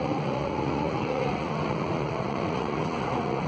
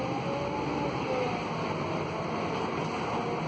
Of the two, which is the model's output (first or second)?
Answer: first